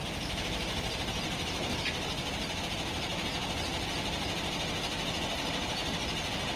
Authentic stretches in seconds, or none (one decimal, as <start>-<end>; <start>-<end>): 0.0-3.9; 4.8-6.6